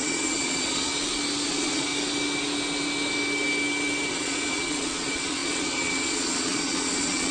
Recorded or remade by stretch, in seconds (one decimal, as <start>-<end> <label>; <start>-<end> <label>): 0.0-0.9 remade; 0.9-1.5 recorded; 1.5-1.9 remade; 1.9-4.1 recorded; 4.1-7.3 remade